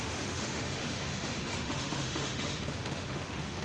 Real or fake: fake